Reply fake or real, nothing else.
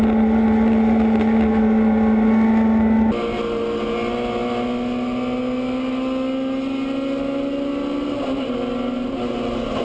real